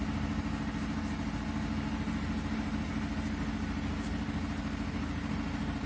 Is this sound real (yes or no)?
yes